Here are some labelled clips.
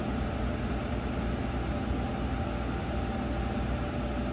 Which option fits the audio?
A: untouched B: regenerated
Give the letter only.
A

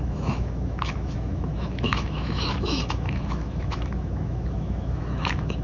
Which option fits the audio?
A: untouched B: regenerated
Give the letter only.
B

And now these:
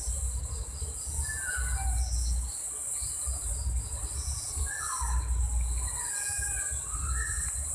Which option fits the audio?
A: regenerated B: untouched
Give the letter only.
B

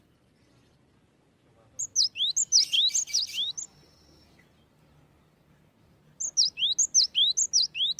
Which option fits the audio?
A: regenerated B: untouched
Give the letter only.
B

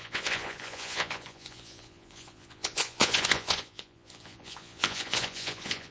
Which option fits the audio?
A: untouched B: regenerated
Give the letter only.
B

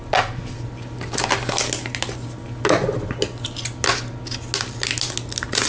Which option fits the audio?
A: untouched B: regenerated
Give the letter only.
A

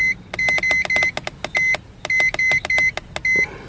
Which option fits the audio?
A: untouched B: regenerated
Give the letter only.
A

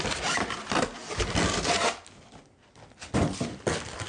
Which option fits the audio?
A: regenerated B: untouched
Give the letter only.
B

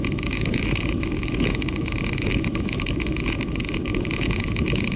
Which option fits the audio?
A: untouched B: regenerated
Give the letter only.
B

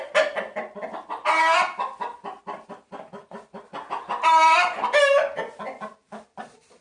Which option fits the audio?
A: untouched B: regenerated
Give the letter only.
A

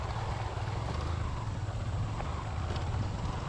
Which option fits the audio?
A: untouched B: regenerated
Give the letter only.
A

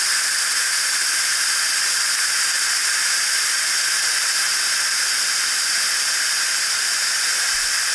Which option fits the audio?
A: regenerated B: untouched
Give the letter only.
B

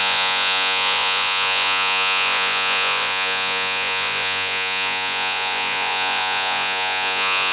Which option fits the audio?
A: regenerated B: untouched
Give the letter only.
A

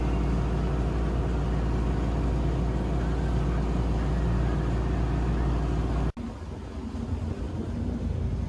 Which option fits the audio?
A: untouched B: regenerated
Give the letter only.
A